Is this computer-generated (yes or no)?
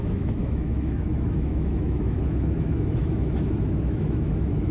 yes